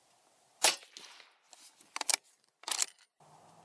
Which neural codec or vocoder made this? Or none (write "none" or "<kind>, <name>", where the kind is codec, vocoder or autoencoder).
none